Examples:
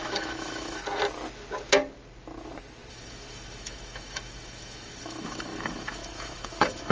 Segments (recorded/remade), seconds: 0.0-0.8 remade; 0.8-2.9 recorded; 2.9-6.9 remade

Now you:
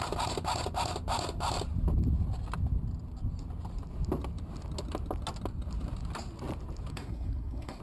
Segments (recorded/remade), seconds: 0.0-6.9 recorded; 6.9-7.8 remade